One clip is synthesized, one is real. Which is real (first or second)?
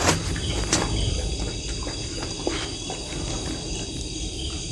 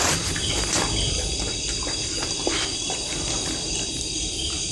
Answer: first